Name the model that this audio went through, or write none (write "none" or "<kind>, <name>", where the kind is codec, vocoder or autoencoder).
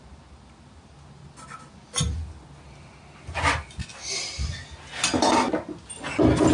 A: none